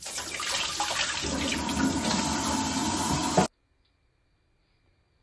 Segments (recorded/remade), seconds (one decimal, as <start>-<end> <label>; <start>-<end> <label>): 0.0-5.2 recorded